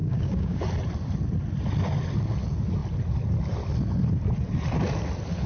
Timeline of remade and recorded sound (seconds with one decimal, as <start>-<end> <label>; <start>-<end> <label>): 0.0-0.6 remade; 0.6-5.5 recorded